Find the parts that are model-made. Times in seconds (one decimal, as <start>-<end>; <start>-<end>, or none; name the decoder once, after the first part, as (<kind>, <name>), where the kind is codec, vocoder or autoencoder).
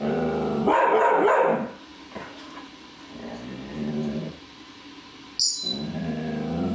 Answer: none